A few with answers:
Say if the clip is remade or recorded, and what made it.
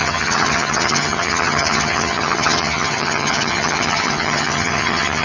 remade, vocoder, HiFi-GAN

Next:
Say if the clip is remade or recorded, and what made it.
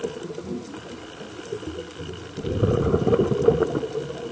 recorded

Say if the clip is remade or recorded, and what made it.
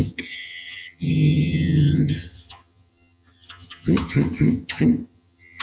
remade, vocoder, HiFi-GAN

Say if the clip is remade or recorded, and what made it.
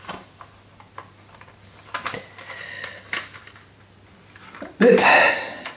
recorded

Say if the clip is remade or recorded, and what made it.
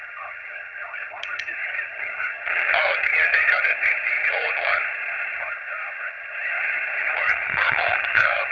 remade, vocoder, HiFi-GAN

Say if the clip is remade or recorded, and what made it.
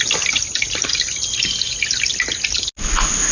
recorded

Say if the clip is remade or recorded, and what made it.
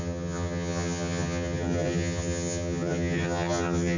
remade, vocoder, HiFi-GAN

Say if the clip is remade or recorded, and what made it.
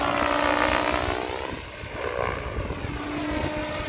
recorded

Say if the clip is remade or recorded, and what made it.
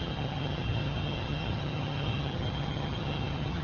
remade, vocoder, HiFi-GAN